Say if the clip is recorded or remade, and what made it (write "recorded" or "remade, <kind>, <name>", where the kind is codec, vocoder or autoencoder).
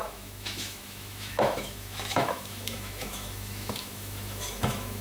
remade, autoencoder, DAC-VAE